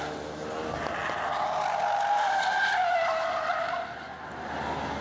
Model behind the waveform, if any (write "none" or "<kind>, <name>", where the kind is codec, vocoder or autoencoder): none